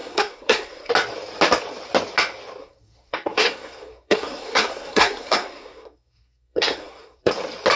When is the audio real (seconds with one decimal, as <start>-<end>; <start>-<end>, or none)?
0.9-2.6; 7.3-7.8